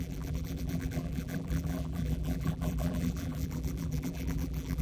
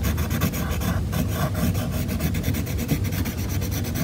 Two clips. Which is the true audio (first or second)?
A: second